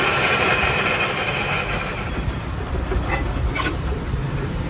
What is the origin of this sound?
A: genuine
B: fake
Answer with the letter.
B